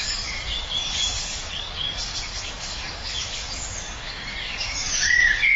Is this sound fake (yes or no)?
yes